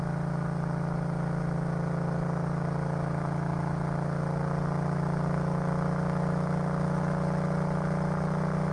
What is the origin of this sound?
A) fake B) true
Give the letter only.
B